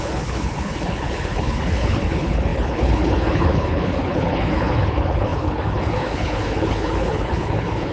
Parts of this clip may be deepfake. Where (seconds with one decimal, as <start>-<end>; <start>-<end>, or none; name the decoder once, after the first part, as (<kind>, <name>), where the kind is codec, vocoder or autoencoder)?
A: 0.0-7.9 (codec, HILCodec)